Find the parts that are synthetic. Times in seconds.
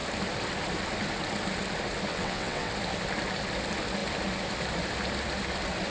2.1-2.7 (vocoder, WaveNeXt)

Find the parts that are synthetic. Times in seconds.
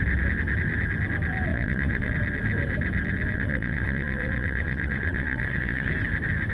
1.5-2.1 (vocoder, WaveNeXt); 3.3-5.9